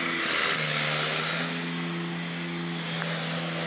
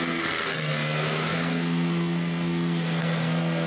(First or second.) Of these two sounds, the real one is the first